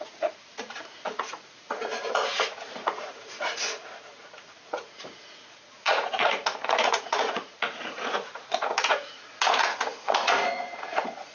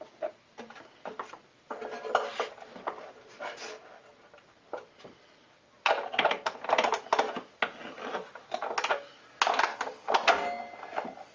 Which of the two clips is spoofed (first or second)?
first